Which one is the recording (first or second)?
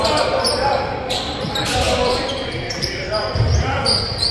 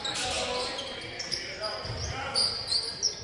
second